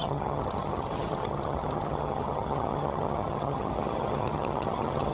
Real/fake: fake